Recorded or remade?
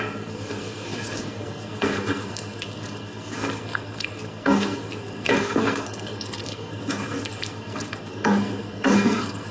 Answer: remade